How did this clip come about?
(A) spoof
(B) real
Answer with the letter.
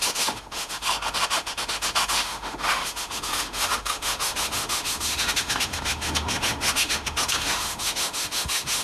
A